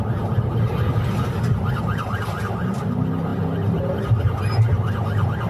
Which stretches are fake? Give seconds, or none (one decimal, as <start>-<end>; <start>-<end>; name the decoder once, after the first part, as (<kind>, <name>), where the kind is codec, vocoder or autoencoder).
none